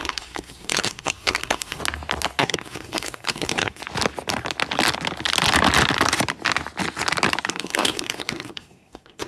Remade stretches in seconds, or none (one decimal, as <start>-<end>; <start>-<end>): 0.0-1.8; 2.4-3.8; 7.5-9.3